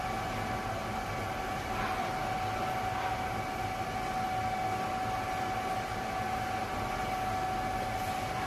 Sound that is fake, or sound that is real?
real